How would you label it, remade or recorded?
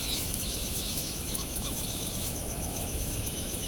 remade